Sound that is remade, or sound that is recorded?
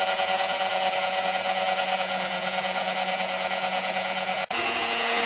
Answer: remade